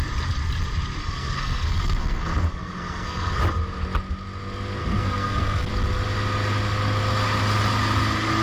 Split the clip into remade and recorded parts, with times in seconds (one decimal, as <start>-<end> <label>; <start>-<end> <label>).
0.0-1.0 recorded; 1.0-3.4 remade; 3.4-4.8 recorded; 4.8-5.7 remade; 5.7-8.4 recorded